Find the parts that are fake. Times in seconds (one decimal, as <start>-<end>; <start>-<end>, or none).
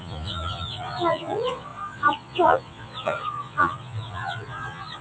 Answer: 0.0-5.0